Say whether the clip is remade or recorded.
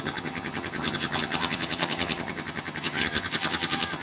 remade